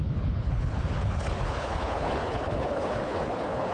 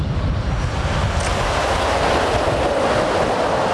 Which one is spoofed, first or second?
first